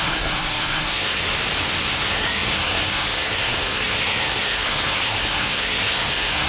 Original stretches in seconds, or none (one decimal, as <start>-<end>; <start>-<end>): 1.2-1.8